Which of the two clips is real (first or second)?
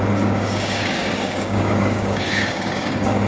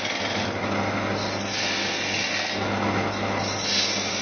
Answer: second